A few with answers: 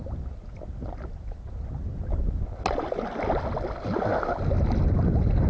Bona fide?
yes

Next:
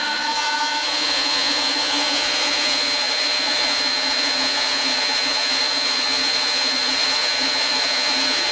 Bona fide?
no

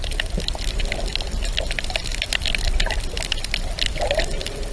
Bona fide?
yes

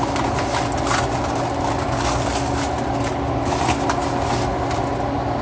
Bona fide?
yes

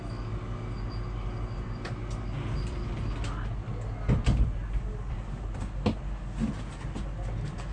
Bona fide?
yes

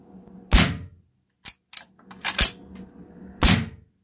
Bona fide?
yes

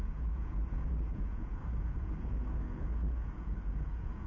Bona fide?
no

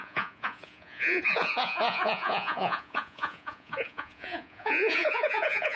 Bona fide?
no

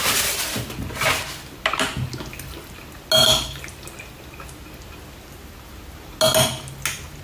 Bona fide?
yes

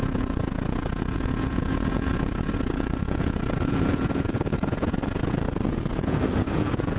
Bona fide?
no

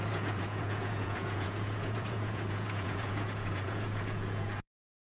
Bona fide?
no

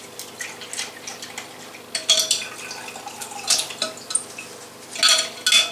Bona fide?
yes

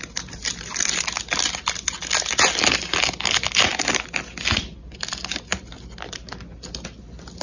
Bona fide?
yes